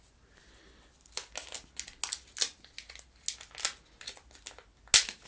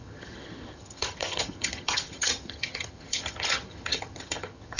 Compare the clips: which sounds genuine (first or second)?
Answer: first